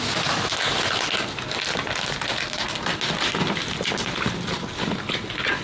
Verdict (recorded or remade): recorded